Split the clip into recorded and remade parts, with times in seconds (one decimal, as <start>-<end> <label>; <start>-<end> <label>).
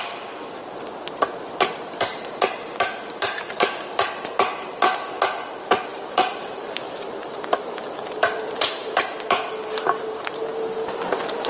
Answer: 0.0-2.1 recorded; 2.1-3.9 remade; 3.9-5.9 recorded; 5.9-9.0 remade; 9.0-11.5 recorded